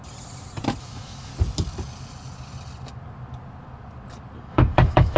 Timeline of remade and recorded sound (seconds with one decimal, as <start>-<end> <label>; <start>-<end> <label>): 0.0-0.8 recorded; 0.8-1.3 remade; 1.3-4.4 recorded; 4.4-5.2 remade